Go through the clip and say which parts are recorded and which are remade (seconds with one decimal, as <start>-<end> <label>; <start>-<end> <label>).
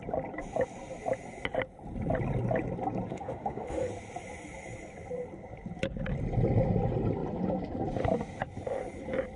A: 0.0-3.1 recorded; 3.1-3.9 remade; 3.9-9.4 recorded